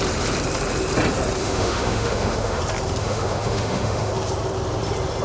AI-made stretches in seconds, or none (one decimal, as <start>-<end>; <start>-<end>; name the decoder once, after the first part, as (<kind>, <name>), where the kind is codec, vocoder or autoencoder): 1.4-2.6 (autoencoder, DAC-VAE); 3.0-4.1